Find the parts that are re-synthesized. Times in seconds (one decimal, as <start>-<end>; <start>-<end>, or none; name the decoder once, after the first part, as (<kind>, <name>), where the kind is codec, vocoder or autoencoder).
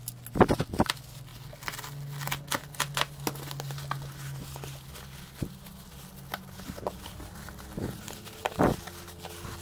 none